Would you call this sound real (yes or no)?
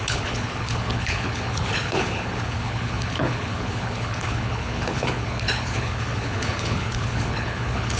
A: no